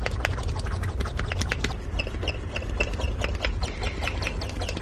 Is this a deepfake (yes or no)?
no